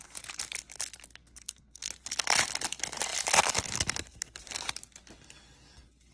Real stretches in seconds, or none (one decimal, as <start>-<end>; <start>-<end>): 0.0-1.2; 1.9-6.1